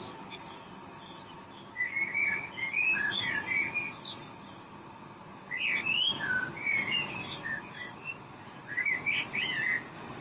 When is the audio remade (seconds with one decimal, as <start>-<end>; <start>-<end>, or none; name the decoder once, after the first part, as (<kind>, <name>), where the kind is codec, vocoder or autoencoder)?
0.8-1.6 (vocoder, BigVGAN v2)